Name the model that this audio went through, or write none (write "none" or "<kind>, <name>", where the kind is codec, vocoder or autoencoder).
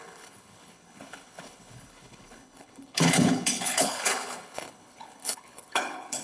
codec, HILCodec